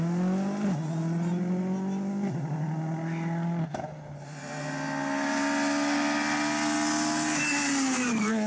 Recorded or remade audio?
recorded